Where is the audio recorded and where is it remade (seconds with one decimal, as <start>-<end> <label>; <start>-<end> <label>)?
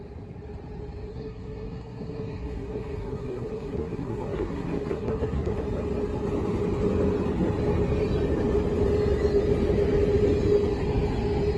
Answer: 0.0-1.1 recorded; 1.1-5.6 remade; 5.6-11.6 recorded